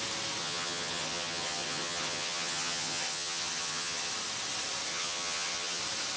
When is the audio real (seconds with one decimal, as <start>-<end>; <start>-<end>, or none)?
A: 0.0-0.4; 4.1-4.9; 5.8-6.2